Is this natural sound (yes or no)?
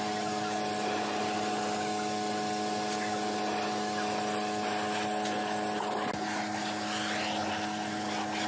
yes